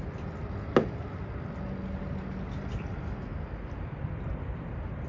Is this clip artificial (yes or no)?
no